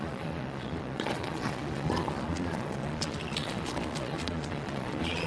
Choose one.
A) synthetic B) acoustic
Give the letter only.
A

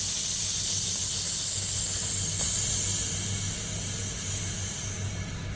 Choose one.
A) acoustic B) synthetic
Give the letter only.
A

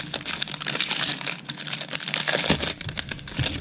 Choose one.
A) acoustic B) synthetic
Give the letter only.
A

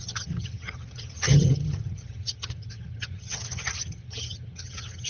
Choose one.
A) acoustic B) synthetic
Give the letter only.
B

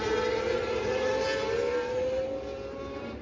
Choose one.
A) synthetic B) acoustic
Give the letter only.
B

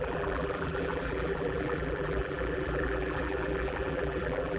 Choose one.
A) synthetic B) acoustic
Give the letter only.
A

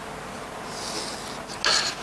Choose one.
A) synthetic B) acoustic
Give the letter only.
B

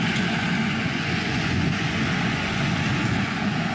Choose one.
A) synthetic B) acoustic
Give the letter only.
A